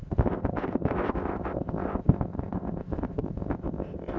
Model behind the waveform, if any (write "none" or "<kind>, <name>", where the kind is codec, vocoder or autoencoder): codec, ZipCodec